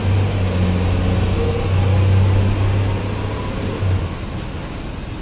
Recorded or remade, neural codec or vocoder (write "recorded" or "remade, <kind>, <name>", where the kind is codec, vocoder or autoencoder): recorded